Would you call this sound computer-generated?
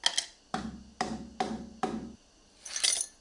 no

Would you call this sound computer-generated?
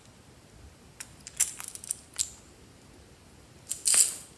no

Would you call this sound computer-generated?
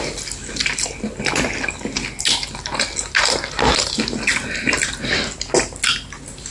no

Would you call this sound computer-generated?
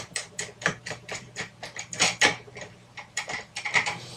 yes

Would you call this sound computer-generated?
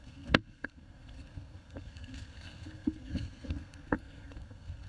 yes